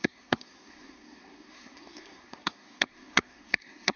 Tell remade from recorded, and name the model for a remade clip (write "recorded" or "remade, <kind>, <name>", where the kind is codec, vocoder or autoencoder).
remade, codec, SNAC